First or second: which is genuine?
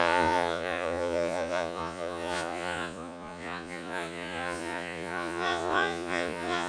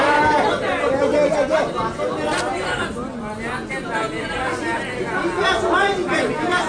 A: second